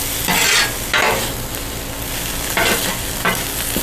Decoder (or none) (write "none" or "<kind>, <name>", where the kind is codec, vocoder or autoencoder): none